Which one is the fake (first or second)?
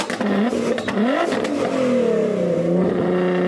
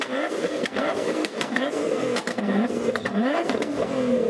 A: second